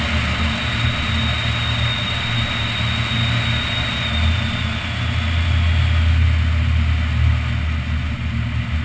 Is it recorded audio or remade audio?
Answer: recorded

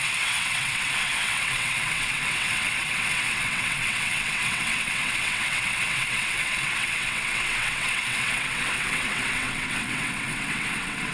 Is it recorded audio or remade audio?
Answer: remade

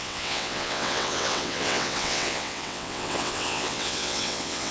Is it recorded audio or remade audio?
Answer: remade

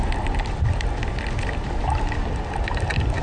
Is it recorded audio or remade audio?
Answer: recorded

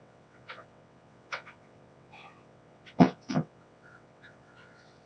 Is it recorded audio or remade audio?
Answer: remade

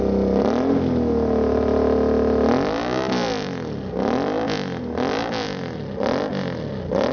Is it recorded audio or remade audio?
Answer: recorded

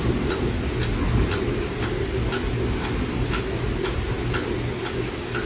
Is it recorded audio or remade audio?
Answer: recorded